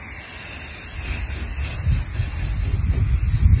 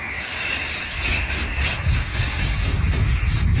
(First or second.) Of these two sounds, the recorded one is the first